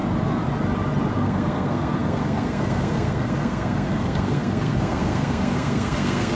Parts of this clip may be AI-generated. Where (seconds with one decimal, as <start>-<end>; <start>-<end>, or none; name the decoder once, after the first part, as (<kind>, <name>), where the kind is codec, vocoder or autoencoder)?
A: 1.1-6.4 (codec, SNAC)